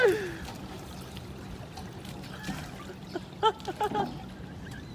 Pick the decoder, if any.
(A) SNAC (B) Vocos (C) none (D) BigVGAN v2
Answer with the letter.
C